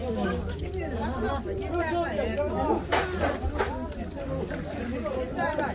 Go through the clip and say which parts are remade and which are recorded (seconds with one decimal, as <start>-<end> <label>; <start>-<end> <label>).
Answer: 0.0-0.7 remade; 0.7-5.7 recorded